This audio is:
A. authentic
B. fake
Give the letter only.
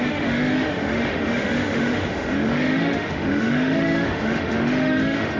B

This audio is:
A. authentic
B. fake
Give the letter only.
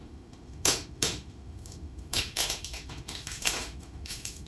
B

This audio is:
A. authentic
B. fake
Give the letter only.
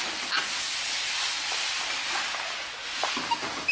A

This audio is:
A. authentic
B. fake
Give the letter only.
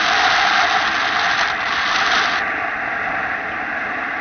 A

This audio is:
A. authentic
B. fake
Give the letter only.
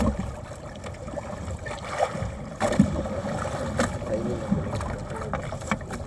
A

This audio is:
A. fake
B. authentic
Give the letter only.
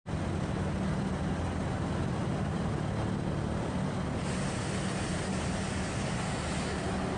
B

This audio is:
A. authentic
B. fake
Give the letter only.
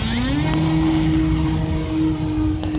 A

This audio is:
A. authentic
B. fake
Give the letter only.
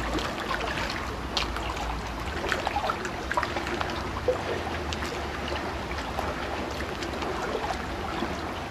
A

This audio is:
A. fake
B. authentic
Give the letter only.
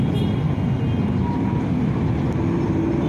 B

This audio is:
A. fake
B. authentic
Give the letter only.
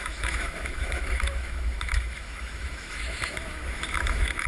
A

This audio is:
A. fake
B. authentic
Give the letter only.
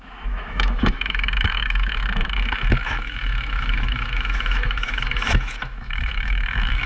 A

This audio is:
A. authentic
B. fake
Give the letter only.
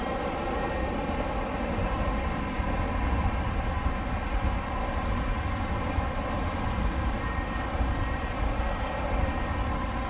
A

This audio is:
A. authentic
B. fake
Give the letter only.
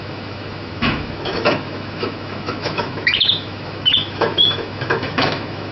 B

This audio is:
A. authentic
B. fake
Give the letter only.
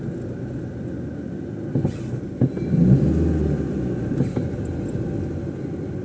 A